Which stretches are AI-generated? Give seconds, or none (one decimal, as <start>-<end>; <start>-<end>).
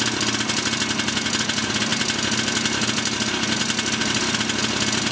none